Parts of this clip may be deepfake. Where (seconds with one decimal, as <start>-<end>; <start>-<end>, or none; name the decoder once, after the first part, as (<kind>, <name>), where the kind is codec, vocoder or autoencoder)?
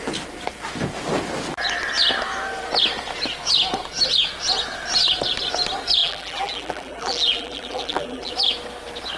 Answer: 6.0-8.3 (vocoder, BigVGAN v2)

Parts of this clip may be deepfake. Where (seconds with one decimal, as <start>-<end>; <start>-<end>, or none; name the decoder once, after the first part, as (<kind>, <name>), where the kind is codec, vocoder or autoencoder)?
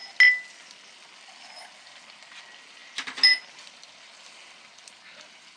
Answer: none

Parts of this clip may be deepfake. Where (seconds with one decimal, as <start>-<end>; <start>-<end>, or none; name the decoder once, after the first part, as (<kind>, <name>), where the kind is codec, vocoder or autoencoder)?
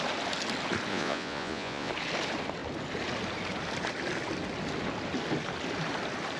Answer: 0.9-1.9 (vocoder, Vocos)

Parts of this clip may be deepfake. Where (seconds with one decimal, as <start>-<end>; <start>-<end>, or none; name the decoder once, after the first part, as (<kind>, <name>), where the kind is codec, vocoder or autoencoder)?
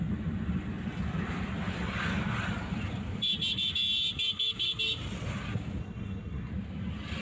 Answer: 5.8-6.5 (codec, SNAC)